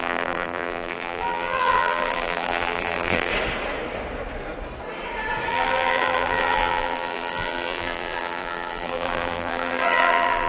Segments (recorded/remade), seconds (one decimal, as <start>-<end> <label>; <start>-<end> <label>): 0.0-3.3 remade; 3.3-5.5 recorded; 5.5-10.5 remade